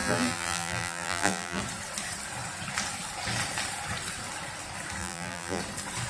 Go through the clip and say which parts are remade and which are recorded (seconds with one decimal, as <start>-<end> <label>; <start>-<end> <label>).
0.0-1.6 remade; 1.6-5.0 recorded; 5.0-5.6 remade; 5.6-6.1 recorded